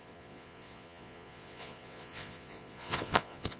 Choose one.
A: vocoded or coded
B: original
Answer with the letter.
A